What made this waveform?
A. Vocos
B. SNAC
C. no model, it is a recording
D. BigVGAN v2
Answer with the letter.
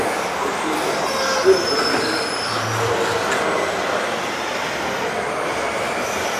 C